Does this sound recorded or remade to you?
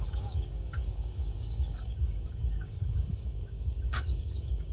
remade